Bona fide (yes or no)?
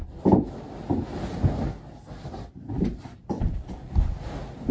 yes